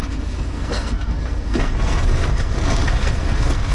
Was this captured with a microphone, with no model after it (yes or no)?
no